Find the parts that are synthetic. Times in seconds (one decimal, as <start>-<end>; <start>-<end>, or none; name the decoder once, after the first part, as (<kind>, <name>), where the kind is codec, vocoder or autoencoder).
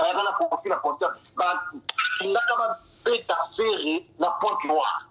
0.0-1.5 (vocoder, BigVGAN v2); 2.7-3.3